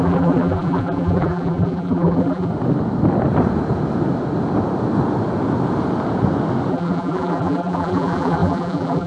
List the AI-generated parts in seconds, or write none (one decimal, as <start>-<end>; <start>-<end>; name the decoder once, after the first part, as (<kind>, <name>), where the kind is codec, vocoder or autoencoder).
0.0-2.5 (vocoder, BigVGAN v2); 6.7-9.1